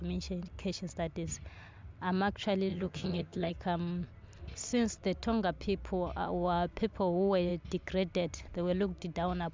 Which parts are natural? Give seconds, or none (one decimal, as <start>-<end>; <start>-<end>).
0.0-2.7; 3.5-9.5

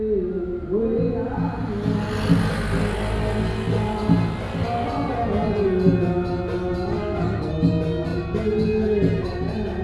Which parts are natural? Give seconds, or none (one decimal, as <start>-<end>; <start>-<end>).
0.0-7.0; 7.5-9.8

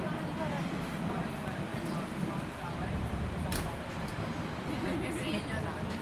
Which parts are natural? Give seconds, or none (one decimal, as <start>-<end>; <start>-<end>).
0.0-6.0

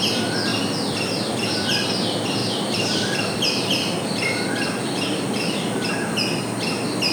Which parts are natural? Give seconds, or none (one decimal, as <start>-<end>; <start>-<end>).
0.0-0.5; 1.8-2.4; 5.9-7.1

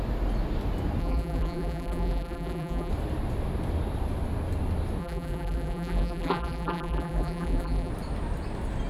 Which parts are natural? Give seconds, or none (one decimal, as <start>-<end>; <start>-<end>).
0.0-1.0; 2.9-5.0; 7.9-8.9

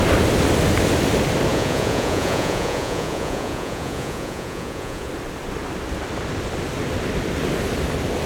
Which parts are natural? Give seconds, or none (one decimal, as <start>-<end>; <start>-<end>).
0.0-1.5; 5.1-8.3